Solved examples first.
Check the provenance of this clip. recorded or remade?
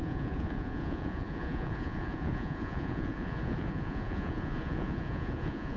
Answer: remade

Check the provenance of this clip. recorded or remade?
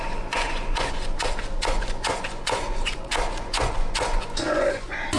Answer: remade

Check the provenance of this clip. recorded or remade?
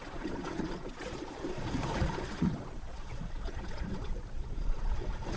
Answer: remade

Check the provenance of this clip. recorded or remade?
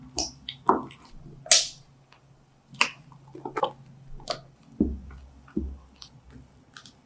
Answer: recorded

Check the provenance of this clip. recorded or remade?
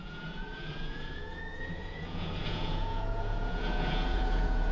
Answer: remade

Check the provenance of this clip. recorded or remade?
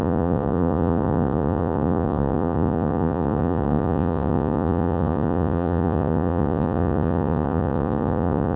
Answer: remade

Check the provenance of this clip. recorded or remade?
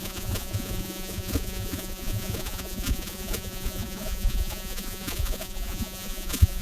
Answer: remade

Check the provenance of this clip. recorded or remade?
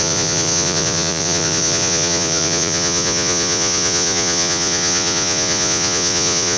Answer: remade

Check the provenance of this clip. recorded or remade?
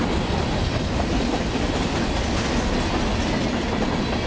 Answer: recorded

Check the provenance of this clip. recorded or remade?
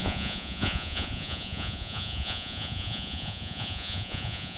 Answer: remade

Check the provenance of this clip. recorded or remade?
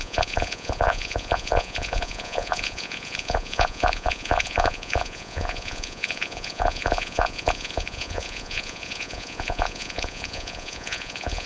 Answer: remade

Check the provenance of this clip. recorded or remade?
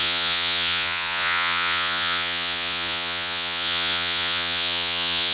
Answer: remade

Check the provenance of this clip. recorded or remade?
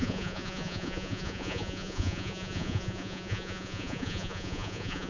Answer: remade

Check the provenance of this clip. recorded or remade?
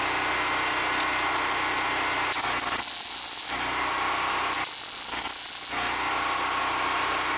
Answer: recorded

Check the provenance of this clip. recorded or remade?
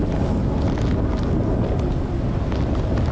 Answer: recorded